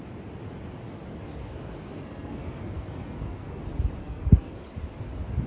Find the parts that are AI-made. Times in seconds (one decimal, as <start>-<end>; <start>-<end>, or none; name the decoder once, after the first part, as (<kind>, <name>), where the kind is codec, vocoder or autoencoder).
1.1-3.6 (codec, SNAC); 4.0-4.6